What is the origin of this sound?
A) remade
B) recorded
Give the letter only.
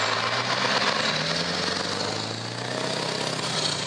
B